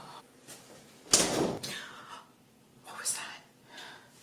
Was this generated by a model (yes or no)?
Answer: no